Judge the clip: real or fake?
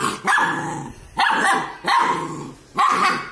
real